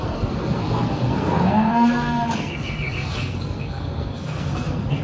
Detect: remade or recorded remade